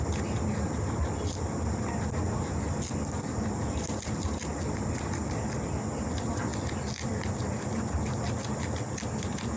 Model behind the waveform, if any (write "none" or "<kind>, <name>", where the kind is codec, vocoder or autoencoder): none